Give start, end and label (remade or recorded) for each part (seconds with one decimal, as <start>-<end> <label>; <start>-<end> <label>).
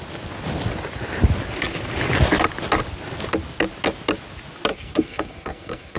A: 0.0-4.7 recorded; 4.7-6.0 remade